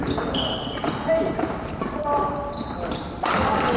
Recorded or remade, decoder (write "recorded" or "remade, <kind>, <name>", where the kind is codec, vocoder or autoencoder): recorded